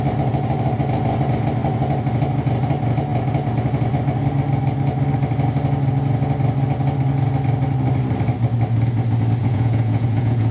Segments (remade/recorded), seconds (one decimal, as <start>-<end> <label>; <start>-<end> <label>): 0.0-9.4 recorded; 9.4-10.5 remade